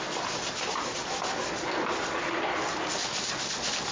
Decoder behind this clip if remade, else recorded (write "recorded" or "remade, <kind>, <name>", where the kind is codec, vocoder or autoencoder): recorded